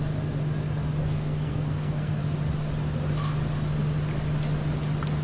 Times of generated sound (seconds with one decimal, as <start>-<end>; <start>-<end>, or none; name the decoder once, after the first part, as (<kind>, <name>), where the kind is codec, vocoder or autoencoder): 1.0-2.2 (codec, SNAC)